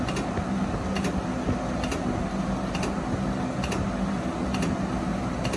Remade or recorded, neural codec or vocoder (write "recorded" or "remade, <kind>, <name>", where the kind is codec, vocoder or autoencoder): recorded